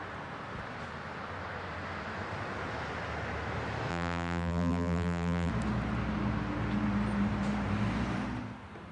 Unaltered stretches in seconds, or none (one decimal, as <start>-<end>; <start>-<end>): 0.0-3.9; 5.5-8.9